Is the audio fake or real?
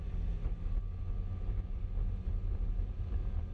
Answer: real